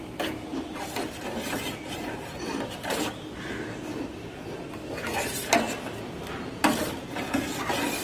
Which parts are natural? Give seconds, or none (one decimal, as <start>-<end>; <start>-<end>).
0.0-0.5; 1.1-8.0